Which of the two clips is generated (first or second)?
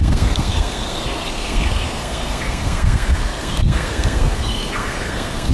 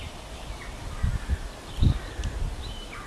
first